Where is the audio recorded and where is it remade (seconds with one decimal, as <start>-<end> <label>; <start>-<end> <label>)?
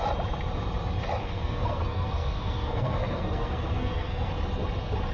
0.0-1.2 recorded; 1.2-4.3 remade; 4.3-5.1 recorded